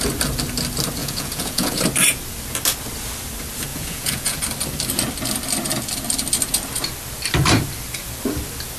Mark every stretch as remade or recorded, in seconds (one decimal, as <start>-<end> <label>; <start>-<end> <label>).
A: 0.0-1.0 recorded; 1.0-1.8 remade; 1.8-3.7 recorded; 3.7-4.4 remade; 4.4-8.8 recorded

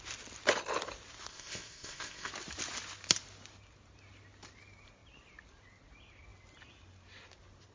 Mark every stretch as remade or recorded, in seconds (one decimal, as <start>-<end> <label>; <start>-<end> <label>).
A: 0.0-1.3 recorded; 1.3-2.3 remade; 2.3-7.7 recorded

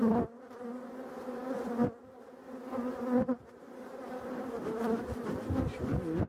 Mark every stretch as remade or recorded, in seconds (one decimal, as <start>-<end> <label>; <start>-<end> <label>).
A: 0.0-6.3 recorded